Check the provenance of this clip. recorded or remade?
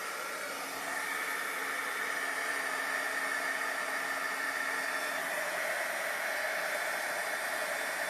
recorded